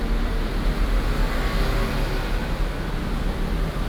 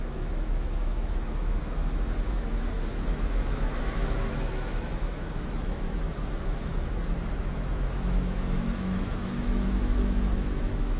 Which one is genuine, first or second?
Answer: first